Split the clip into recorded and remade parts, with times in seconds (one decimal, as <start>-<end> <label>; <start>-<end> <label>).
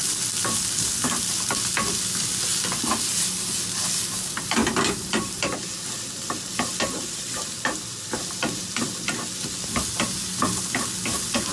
0.0-11.5 recorded